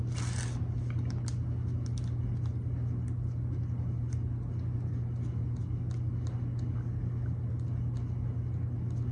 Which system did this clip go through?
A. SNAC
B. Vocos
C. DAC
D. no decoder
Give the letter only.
D